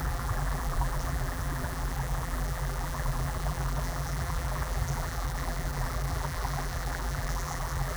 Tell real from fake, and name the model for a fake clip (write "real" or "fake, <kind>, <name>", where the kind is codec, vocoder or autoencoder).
fake, vocoder, BigVGAN v2